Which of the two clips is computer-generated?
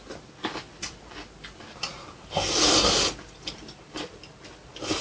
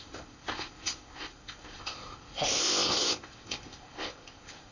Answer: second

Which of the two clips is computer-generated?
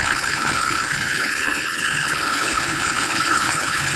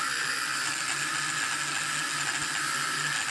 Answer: first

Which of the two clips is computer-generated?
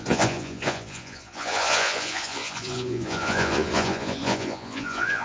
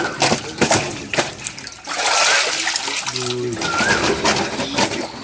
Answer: first